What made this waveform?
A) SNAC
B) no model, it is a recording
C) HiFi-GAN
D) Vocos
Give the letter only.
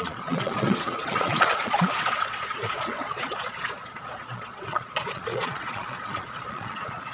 D